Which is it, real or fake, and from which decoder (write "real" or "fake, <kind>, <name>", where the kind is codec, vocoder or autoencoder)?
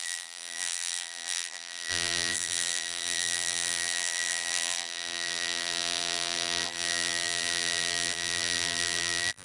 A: fake, vocoder, BigVGAN v2